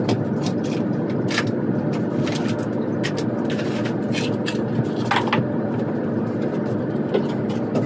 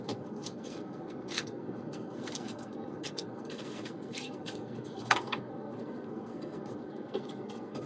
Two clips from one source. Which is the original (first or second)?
first